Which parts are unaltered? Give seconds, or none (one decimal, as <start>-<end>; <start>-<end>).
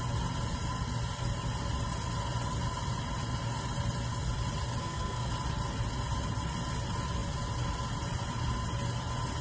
0.0-4.8; 5.3-9.4